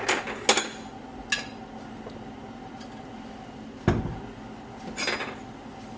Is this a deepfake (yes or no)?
no